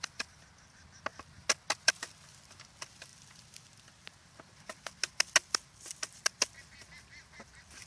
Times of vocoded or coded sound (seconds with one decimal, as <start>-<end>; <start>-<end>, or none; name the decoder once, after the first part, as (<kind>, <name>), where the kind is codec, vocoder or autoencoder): none